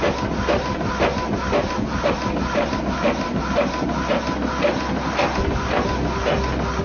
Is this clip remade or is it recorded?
recorded